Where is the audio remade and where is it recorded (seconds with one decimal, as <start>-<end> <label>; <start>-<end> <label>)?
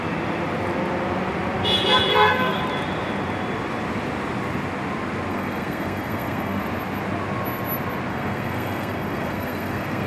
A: 0.0-2.1 recorded; 2.1-2.6 remade; 2.6-5.3 recorded; 5.3-6.6 remade; 6.6-8.1 recorded; 8.1-10.1 remade